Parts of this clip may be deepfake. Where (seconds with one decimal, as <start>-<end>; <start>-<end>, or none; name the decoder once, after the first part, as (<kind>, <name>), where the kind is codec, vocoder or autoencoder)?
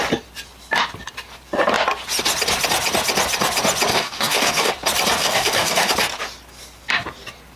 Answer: 3.9-4.7 (codec, DAC); 5.2-5.9